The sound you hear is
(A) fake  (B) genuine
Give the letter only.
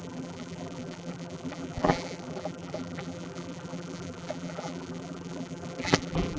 A